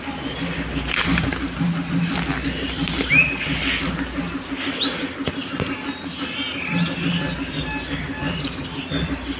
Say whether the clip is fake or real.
real